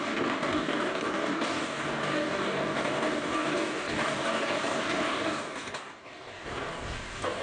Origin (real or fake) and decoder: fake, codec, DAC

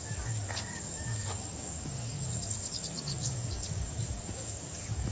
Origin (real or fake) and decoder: fake, codec, DAC